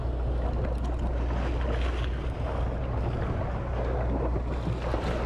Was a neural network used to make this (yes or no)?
no